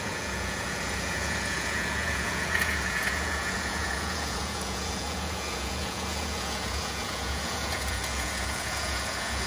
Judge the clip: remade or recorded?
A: remade